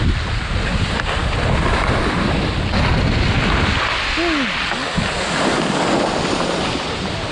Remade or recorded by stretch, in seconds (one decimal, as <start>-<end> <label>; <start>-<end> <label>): 0.0-4.8 recorded; 4.8-5.5 remade; 5.5-7.3 recorded